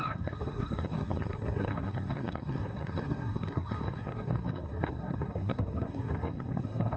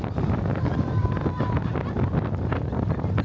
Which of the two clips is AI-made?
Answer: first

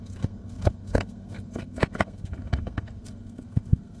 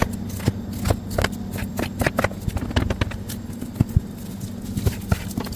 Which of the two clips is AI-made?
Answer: first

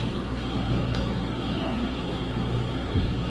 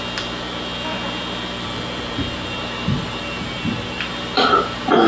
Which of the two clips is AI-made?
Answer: first